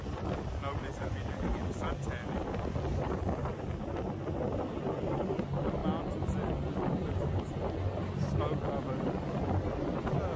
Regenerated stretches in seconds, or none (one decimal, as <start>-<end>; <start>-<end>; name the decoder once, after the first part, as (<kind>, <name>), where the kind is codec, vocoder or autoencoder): none